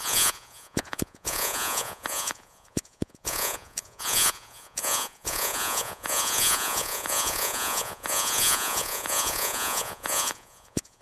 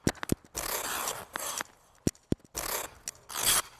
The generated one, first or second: first